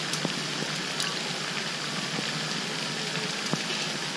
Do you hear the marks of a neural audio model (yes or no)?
no